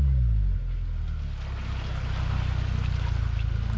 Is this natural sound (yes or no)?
yes